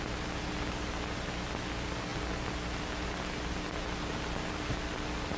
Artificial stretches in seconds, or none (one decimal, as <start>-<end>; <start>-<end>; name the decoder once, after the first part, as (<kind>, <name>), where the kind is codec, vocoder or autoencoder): none